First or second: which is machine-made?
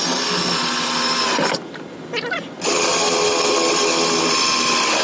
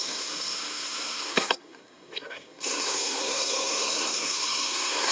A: second